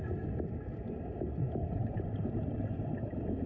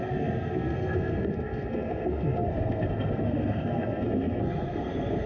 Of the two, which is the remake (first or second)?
second